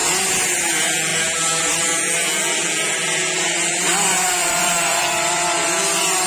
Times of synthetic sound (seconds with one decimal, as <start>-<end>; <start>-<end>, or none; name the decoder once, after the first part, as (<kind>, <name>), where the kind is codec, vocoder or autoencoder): 4.4-5.4 (vocoder, BigVGAN v2)